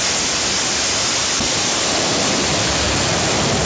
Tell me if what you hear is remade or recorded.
recorded